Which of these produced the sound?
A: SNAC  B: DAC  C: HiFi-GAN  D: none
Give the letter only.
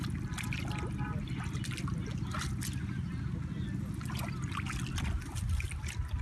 D